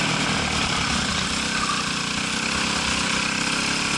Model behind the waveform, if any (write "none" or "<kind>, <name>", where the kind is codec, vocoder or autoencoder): none